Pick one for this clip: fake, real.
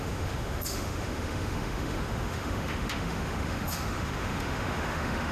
fake